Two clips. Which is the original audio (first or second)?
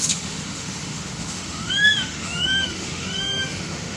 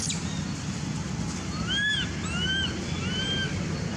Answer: second